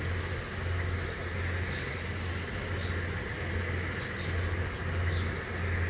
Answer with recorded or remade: recorded